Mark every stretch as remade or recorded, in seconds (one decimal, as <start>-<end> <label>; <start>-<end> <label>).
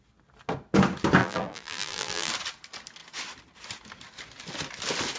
0.0-1.2 recorded; 1.2-2.3 remade; 2.3-5.2 recorded